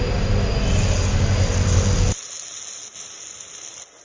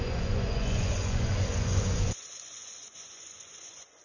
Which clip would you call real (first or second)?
first